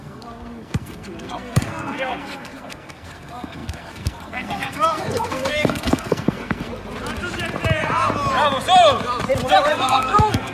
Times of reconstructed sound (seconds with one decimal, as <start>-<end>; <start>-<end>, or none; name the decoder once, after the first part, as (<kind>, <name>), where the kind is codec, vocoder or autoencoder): 0.0-6.7 (codec, SNAC); 9.7-10.5